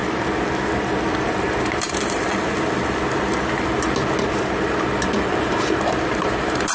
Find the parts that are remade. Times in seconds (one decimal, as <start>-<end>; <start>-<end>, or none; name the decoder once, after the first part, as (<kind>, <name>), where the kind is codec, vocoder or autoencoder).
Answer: 1.2-2.3 (vocoder, BigVGAN v2); 6.2-6.7